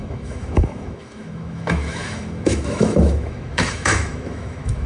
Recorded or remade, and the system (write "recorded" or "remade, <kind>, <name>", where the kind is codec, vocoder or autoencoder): remade, autoencoder, DAC-VAE